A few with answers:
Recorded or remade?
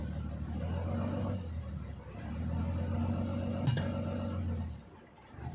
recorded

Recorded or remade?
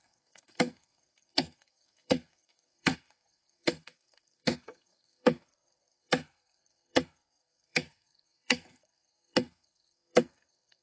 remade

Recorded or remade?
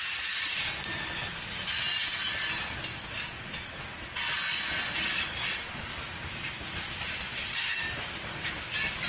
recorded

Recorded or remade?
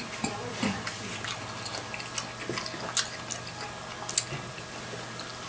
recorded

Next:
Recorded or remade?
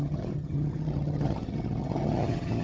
remade